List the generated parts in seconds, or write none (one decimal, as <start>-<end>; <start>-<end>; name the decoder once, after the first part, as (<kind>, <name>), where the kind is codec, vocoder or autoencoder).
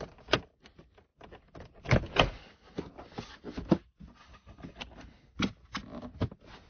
4.2-4.8 (codec, HILCodec)